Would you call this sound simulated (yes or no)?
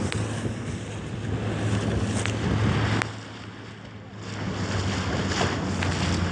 no